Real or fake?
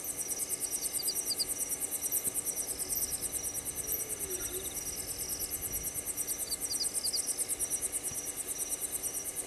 real